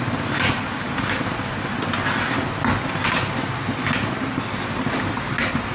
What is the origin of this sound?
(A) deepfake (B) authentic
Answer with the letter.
B